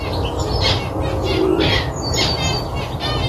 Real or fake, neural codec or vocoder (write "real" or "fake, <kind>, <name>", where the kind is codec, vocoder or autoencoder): real